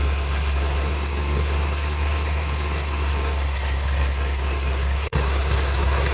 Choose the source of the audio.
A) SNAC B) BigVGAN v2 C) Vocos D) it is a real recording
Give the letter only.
A